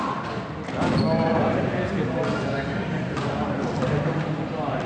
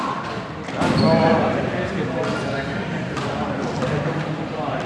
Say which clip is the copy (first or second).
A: second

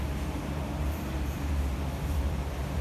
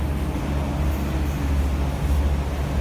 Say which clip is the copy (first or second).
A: first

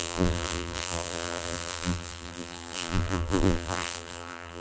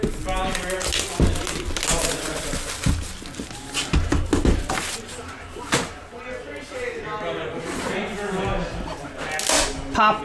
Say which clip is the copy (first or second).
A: first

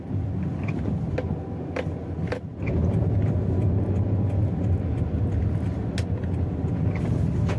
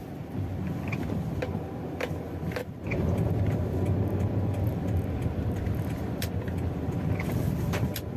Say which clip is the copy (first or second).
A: second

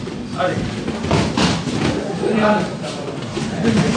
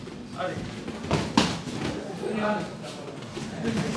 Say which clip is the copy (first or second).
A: first